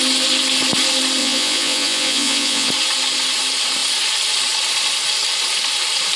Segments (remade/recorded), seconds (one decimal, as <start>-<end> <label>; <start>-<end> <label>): 0.0-1.2 recorded; 1.2-2.7 remade; 2.7-6.2 recorded